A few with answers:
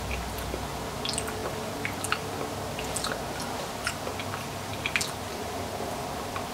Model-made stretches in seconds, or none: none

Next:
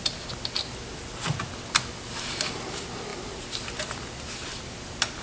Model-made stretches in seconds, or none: none

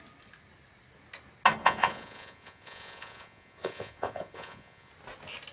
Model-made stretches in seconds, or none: 1.6-4.9 (vocoder, Vocos)

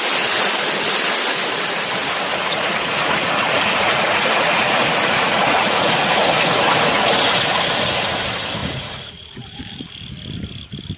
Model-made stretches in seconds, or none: 2.3-6.9 (vocoder, Vocos); 8.6-9.6

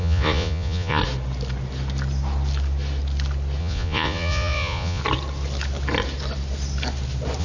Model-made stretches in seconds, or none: 0.0-1.0 (vocoder, Vocos); 3.6-5.0

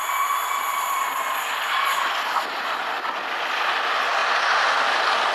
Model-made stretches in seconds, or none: none

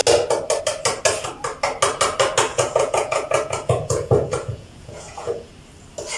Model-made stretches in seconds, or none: 2.5-5.5 (vocoder, Vocos)